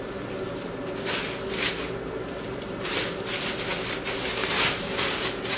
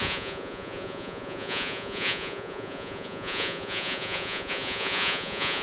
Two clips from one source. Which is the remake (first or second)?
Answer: second